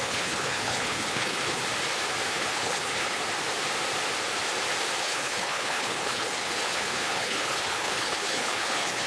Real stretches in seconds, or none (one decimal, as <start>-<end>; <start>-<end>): 1.6-2.3; 3.2-5.0